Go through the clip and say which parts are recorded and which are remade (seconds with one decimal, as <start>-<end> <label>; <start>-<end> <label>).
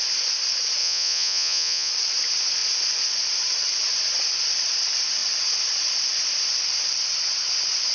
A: 0.0-0.8 recorded; 0.8-1.9 remade; 1.9-7.9 recorded